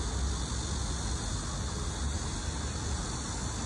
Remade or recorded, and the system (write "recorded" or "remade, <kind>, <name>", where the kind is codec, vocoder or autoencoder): recorded